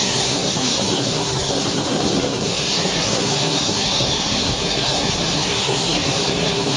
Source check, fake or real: fake